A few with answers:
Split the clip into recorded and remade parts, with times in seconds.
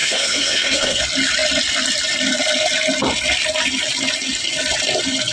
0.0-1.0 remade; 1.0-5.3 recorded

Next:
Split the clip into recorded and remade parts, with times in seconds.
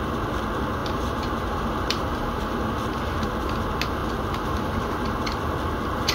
0.0-0.8 recorded; 0.8-2.7 remade; 2.7-4.0 recorded; 4.0-4.8 remade; 4.8-6.1 recorded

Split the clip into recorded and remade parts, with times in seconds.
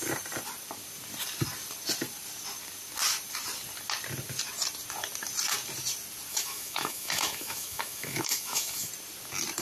0.0-6.3 recorded; 6.3-8.9 remade; 8.9-9.6 recorded